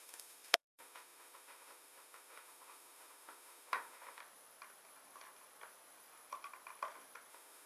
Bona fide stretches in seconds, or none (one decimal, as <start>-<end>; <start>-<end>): 4.2-7.3